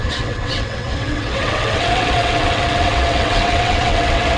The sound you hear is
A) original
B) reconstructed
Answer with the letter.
B